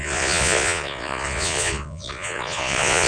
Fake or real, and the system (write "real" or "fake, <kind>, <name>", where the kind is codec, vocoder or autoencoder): fake, vocoder, Vocos